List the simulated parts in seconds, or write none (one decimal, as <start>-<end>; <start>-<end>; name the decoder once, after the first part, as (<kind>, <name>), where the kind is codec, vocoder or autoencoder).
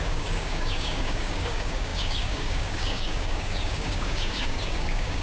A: 0.0-5.2 (codec, DAC)